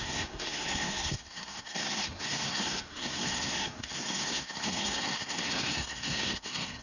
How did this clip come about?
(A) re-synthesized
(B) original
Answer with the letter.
A